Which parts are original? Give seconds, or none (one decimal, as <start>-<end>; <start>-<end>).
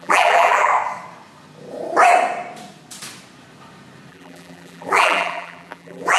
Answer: 0.7-4.1